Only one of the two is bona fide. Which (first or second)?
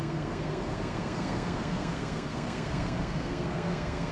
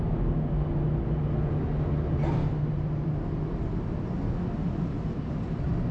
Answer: second